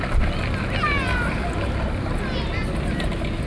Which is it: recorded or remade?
recorded